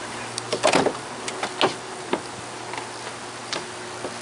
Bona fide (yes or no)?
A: yes